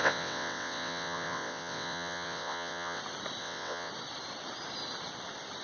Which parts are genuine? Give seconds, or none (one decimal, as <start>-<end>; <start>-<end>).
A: 3.0-3.4; 3.9-5.6